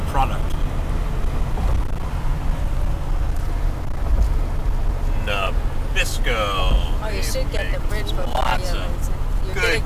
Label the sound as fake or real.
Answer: real